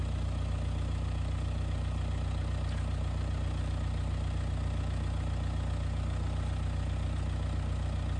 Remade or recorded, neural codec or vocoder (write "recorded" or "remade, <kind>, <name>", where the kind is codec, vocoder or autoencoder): recorded